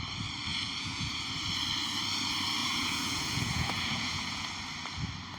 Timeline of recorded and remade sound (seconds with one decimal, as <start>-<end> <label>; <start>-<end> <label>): 0.0-0.5 recorded; 0.5-1.2 remade; 1.2-2.6 recorded; 2.6-4.5 remade; 4.5-5.4 recorded